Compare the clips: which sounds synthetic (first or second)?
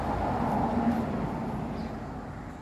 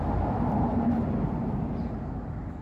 second